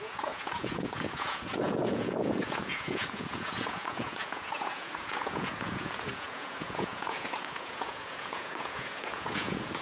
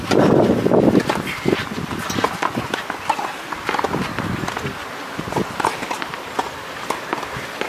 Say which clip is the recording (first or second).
second